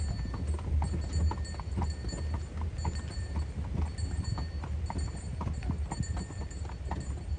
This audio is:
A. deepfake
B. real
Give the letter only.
B